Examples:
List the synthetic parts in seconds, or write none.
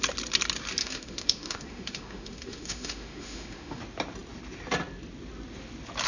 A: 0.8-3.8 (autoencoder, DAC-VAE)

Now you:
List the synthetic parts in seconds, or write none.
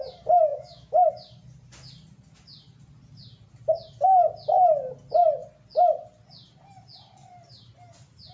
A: 0.5-1.1 (autoencoder, DAC-VAE)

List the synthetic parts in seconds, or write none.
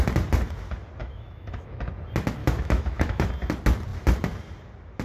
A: 1.0-1.9 (autoencoder, DAC-VAE); 2.4-3.3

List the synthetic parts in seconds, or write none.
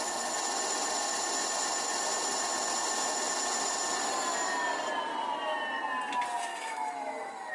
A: 6.5-7.5 (autoencoder, DAC-VAE)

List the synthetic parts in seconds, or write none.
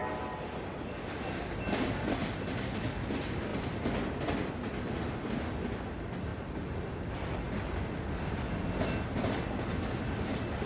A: none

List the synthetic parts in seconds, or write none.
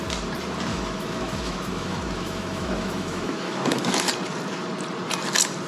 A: 0.7-4.1 (autoencoder, DAC-VAE)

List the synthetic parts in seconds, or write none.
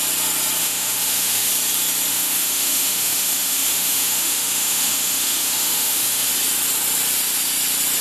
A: 0.6-1.5 (autoencoder, DAC-VAE); 2.1-6.3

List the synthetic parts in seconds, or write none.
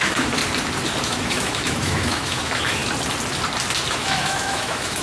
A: 0.0-0.4 (autoencoder, DAC-VAE); 1.0-2.8; 3.9-5.0